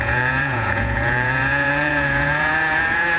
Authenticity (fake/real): fake